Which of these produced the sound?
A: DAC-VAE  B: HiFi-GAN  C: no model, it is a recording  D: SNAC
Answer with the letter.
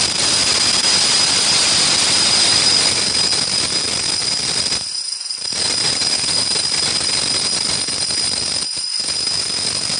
C